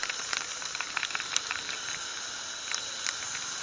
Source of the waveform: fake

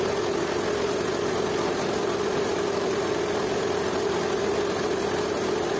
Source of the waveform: real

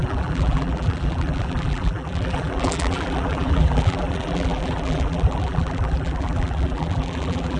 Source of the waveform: fake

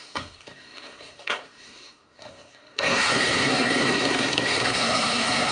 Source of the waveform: fake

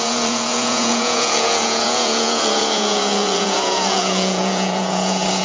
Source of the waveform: fake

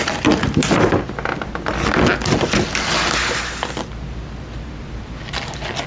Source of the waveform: real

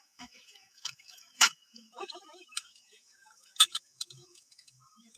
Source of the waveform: fake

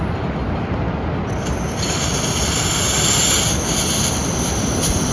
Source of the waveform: real